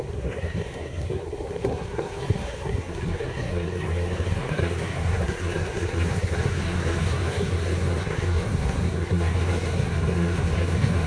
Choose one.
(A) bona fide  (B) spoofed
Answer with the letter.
B